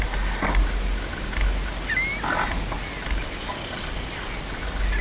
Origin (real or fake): real